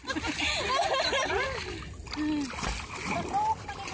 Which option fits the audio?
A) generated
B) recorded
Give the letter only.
B